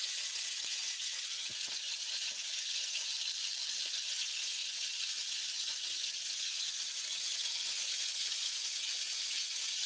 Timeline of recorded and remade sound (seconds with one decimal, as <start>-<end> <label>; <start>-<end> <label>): 0.0-3.1 remade; 3.1-3.9 recorded; 3.9-9.9 remade